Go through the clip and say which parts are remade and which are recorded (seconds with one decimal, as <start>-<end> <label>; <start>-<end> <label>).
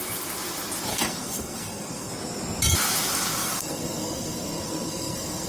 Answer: 0.0-0.9 recorded; 0.9-2.1 remade; 2.1-3.4 recorded; 3.4-5.5 remade